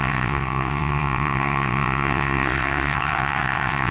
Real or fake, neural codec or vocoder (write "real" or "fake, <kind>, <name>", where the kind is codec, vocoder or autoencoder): fake, vocoder, WaveNeXt